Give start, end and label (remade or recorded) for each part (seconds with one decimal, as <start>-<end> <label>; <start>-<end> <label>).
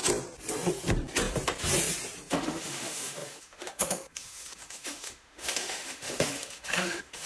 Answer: 0.0-2.3 recorded; 2.3-7.3 remade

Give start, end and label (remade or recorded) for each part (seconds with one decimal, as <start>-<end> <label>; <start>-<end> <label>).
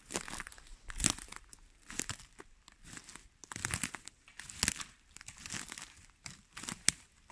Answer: 0.0-7.3 recorded